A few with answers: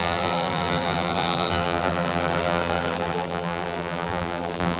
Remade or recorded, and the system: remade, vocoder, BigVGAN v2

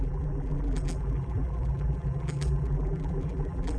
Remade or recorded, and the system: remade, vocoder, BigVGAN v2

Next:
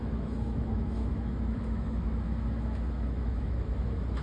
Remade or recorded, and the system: remade, autoencoder, DAC-VAE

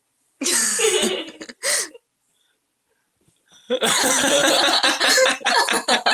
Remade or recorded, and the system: recorded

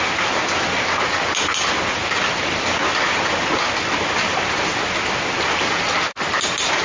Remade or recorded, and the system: recorded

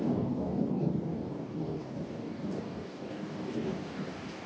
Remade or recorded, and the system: remade, codec, DAC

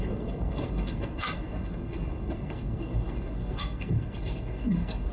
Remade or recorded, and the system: remade, codec, SNAC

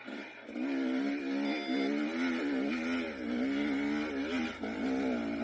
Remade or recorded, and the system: recorded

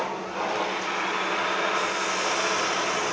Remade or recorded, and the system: recorded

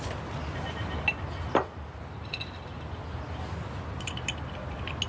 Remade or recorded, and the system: recorded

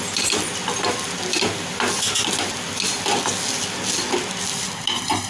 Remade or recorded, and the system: recorded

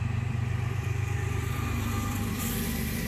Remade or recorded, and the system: remade, vocoder, BigVGAN v2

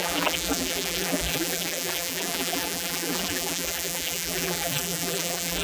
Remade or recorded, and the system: remade, vocoder, BigVGAN v2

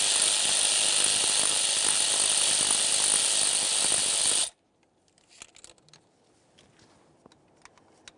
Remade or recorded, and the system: recorded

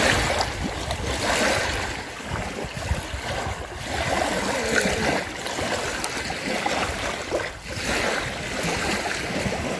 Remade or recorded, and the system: recorded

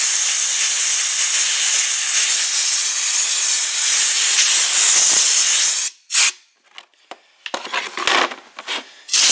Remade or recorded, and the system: recorded